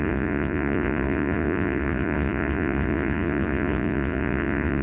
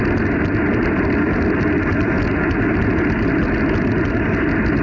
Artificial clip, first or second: first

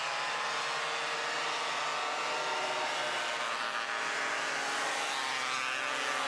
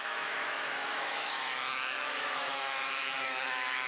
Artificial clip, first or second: second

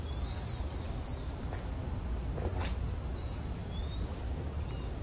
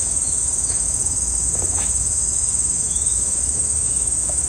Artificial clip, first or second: second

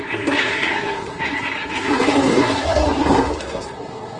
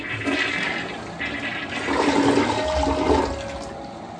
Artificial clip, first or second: first